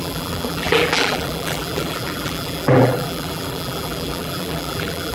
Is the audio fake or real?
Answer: fake